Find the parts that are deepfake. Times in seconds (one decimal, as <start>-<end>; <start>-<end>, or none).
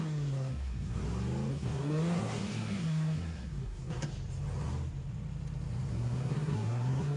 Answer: 0.0-1.0; 1.5-4.1; 5.9-7.2